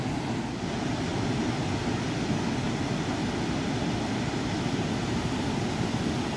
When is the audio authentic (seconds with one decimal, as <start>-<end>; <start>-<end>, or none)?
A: 0.0-3.2; 6.0-6.4